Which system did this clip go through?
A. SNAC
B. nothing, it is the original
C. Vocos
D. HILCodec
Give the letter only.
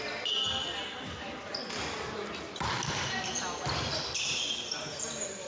B